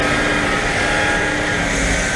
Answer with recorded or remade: recorded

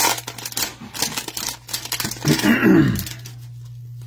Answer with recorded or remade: recorded